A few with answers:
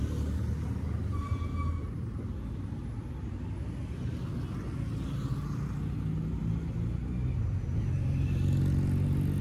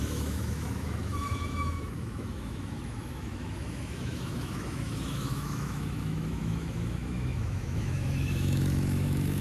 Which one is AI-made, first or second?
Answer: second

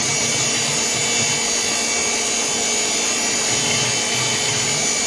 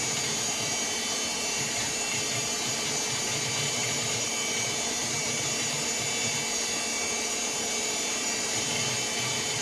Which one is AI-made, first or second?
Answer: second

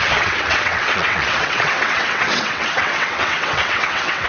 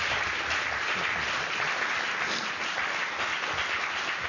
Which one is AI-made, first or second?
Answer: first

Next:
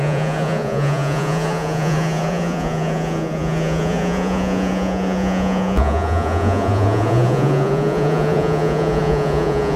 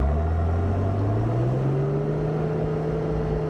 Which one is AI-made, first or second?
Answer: first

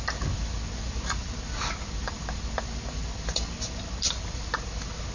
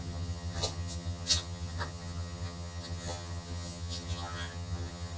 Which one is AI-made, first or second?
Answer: second